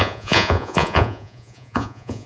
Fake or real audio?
fake